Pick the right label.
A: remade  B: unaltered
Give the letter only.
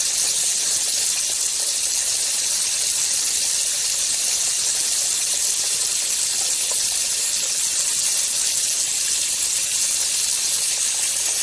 B